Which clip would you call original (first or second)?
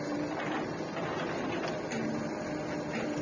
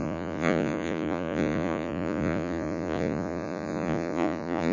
first